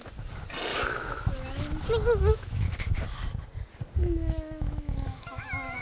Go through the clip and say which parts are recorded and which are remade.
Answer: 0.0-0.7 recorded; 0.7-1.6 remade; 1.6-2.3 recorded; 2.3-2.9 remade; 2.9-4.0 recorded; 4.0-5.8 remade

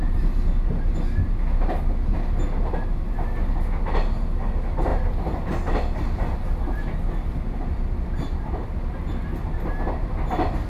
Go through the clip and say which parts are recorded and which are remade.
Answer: 0.0-10.7 recorded

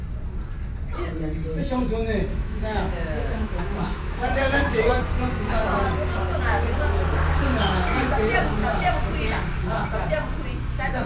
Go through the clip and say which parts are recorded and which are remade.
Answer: 0.0-2.3 recorded; 2.3-5.0 remade; 5.0-11.1 recorded

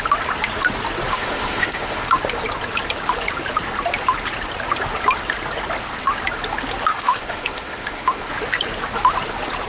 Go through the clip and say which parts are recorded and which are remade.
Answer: 0.0-1.1 recorded; 1.1-2.2 remade; 2.2-6.9 recorded; 6.9-8.3 remade; 8.3-9.7 recorded